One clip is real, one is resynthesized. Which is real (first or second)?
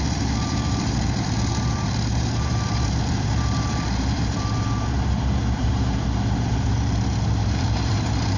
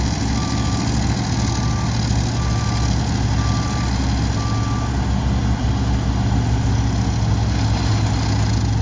second